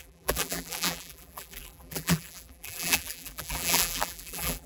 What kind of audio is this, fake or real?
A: fake